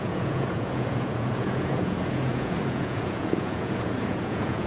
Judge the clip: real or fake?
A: fake